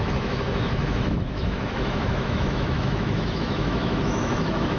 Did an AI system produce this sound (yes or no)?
yes